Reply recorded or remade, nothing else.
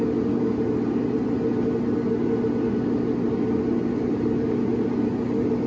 recorded